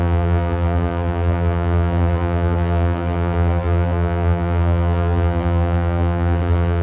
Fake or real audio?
fake